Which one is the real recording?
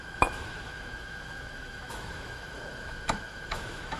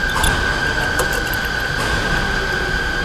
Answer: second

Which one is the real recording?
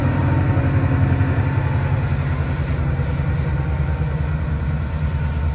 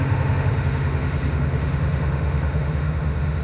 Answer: first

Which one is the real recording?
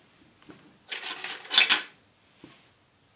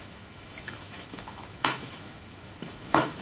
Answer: first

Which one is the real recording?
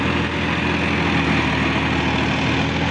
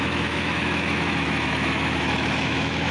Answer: first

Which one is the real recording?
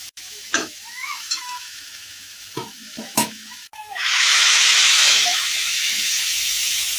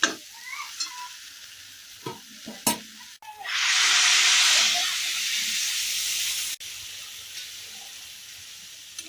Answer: second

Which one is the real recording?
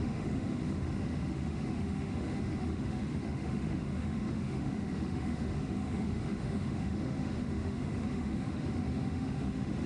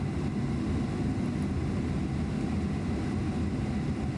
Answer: second